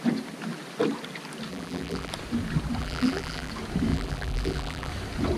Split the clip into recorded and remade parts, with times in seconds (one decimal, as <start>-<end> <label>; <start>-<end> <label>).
0.0-1.5 recorded; 1.5-2.1 remade; 2.1-2.8 recorded; 2.8-3.5 remade; 3.5-3.9 recorded; 3.9-4.9 remade; 4.9-5.4 recorded